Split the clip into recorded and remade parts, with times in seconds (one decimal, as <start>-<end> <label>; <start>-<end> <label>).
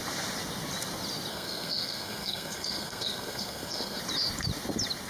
0.0-1.3 recorded; 1.3-4.0 remade; 4.0-5.1 recorded